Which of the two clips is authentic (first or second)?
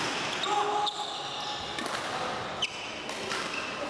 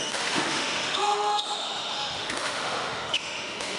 first